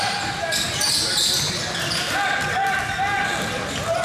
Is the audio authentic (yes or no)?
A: yes